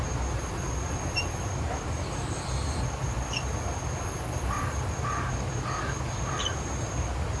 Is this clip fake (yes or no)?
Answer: no